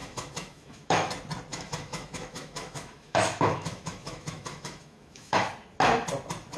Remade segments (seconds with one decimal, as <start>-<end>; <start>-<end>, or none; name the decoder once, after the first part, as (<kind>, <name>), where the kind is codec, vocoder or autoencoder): 0.0-1.1 (autoencoder, DAC-VAE); 1.5-5.5